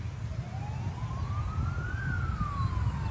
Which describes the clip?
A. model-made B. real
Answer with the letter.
B